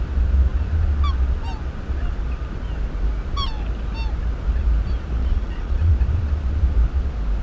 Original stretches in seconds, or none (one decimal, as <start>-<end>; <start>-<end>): 0.0-5.2; 5.9-7.4